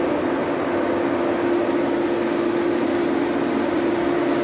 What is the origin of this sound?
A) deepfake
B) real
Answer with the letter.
B